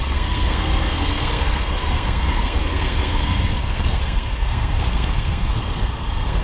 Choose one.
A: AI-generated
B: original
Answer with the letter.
A